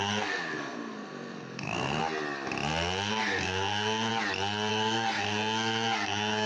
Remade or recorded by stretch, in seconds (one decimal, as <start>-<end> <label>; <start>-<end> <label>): 0.0-2.0 remade; 2.0-3.1 recorded; 3.1-4.1 remade; 4.1-4.7 recorded; 4.7-6.5 remade